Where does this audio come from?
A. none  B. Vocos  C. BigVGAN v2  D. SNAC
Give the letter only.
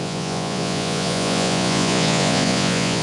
B